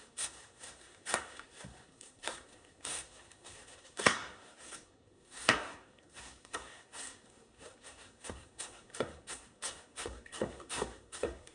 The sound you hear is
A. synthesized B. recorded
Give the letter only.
A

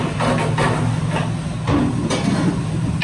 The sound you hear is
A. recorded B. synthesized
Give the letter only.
A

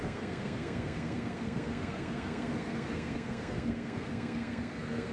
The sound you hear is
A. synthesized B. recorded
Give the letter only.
A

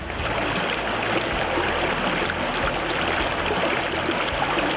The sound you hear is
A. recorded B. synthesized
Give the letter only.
A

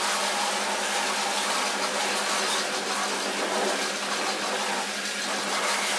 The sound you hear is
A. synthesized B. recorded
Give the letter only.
B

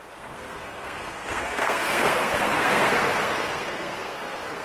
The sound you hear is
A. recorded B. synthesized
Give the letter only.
B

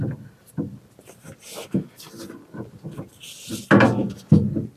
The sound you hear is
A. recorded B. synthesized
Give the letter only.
A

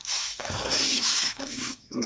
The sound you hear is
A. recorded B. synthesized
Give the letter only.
B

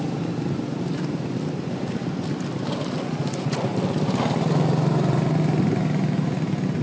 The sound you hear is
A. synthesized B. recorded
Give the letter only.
B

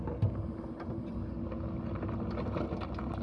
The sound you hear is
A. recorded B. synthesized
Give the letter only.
A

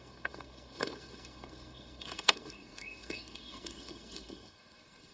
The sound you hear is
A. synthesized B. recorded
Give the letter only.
A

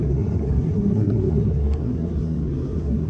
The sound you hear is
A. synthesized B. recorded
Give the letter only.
A